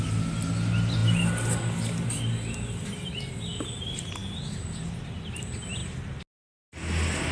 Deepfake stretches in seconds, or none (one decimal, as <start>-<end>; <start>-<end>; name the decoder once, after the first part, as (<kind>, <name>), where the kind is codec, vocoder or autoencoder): none